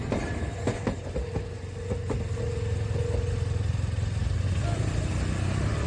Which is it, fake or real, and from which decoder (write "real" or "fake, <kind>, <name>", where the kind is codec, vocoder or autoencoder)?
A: real